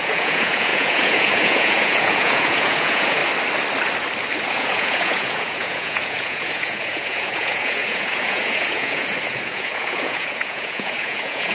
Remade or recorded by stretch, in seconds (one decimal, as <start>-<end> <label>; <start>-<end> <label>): 0.0-3.2 remade; 3.2-4.5 recorded; 4.5-11.5 remade